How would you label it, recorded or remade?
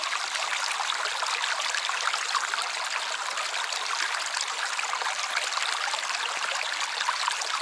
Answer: recorded